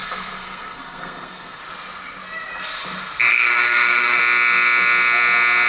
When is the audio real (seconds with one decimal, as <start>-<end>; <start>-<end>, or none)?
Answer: 1.6-3.3; 4.2-5.7